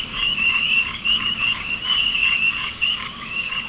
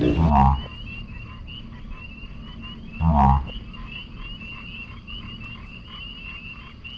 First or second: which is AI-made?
first